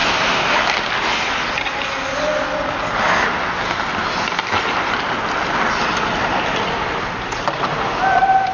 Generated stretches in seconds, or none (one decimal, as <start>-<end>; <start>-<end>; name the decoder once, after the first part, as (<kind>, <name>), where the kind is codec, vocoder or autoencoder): none